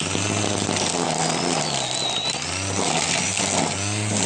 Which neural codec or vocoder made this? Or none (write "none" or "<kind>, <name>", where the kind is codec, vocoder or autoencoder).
none